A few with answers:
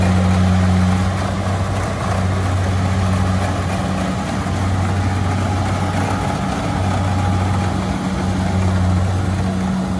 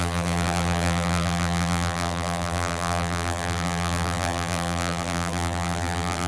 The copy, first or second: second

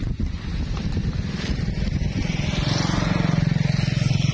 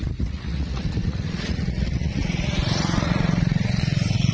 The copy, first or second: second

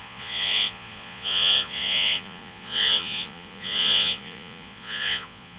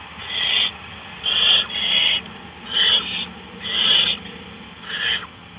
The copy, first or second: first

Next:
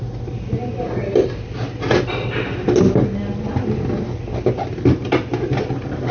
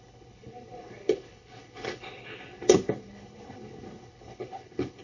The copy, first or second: second